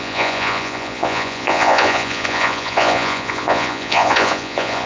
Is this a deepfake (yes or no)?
yes